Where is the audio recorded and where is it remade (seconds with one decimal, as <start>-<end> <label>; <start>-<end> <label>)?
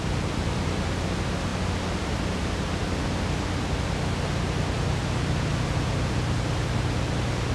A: 0.0-7.5 recorded